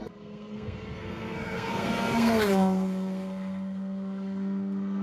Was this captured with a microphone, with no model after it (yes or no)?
no